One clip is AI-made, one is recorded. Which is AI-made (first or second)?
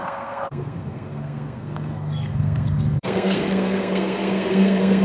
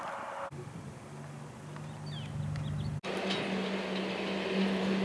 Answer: first